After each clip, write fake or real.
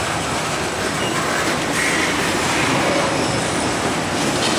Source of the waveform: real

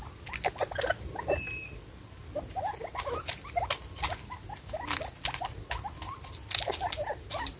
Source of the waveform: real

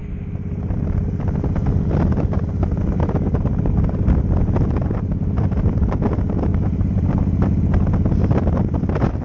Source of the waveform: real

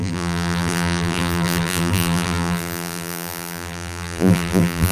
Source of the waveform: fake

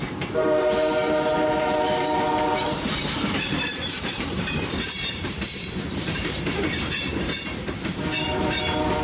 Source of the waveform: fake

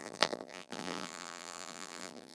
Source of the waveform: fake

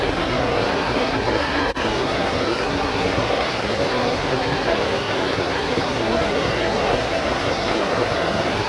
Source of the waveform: fake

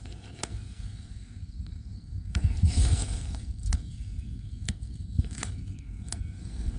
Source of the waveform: fake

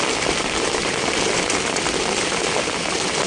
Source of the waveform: real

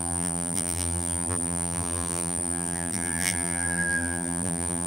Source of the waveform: fake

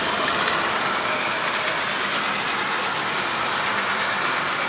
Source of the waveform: real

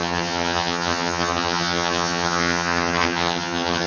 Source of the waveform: fake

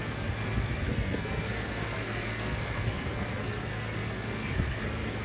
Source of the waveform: fake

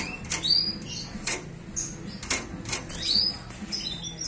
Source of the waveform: real